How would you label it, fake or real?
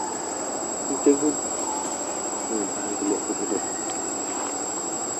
real